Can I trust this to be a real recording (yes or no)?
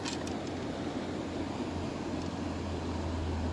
yes